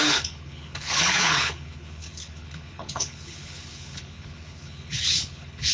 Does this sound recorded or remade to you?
remade